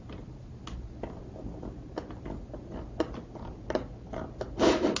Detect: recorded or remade recorded